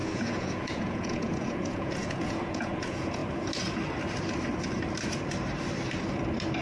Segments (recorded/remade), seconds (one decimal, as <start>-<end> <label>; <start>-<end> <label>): 0.0-3.2 remade; 3.2-6.6 recorded